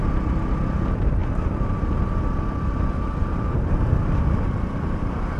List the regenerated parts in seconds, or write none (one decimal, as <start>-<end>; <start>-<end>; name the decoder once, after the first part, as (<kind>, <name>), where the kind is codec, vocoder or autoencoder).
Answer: 3.2-4.2 (vocoder, BigVGAN v2)